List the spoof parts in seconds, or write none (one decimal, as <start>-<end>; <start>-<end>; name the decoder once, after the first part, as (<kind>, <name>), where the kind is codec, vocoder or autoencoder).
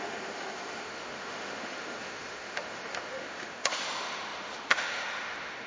0.0-5.7 (autoencoder, DAC-VAE)